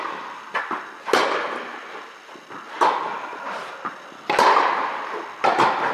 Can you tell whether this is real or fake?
real